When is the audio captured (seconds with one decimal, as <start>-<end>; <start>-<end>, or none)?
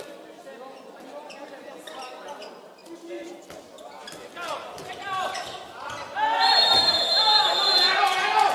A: 0.0-4.5; 7.4-8.5